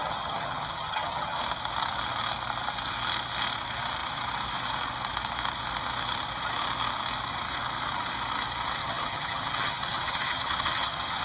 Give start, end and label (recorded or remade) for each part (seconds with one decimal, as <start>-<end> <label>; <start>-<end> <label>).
0.0-1.4 remade; 1.4-8.8 recorded; 8.8-11.2 remade